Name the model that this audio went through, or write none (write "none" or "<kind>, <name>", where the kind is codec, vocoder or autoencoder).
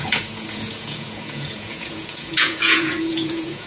vocoder, Vocos